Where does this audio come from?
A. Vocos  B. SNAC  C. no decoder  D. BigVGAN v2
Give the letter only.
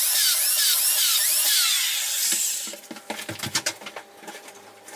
C